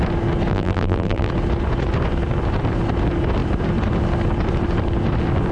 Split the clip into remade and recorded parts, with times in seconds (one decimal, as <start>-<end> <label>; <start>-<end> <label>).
0.0-0.5 recorded; 0.5-1.3 remade; 1.3-5.5 recorded